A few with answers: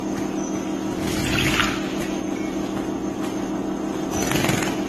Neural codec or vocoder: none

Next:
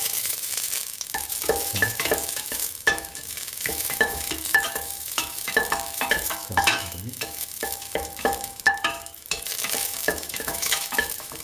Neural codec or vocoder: autoencoder, DAC-VAE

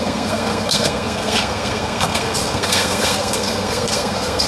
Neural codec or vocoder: codec, SNAC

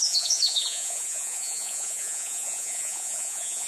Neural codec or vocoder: vocoder, Vocos